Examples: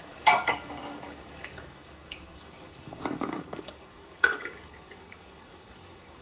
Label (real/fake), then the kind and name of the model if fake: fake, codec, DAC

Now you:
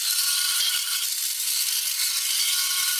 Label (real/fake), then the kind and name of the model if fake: real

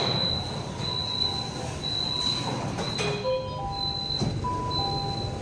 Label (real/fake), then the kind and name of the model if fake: real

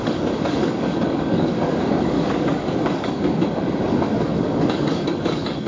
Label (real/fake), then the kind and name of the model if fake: fake, codec, DAC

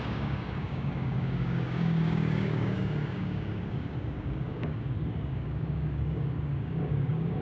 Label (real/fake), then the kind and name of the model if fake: fake, codec, DAC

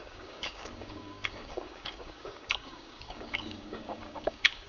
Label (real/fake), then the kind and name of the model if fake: fake, codec, DAC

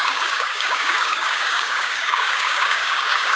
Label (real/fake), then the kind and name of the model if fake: fake, codec, DAC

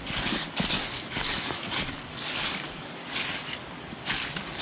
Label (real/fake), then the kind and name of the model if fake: fake, codec, DAC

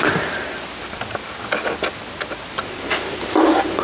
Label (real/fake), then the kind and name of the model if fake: real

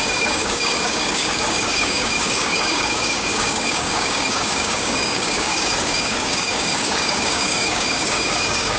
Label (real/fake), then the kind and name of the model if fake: fake, codec, DAC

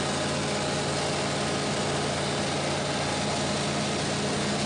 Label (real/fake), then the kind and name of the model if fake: real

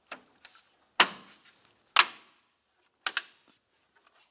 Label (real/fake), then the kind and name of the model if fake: real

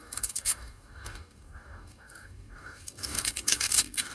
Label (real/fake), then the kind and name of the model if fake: fake, codec, DAC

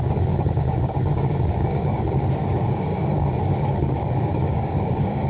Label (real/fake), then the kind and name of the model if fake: fake, codec, DAC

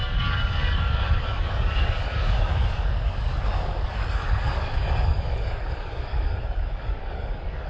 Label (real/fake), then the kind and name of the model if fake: fake, codec, DAC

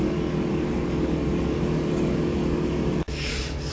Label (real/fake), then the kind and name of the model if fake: fake, codec, DAC